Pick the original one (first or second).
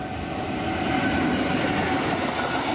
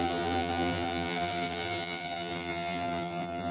first